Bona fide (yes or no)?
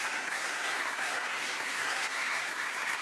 no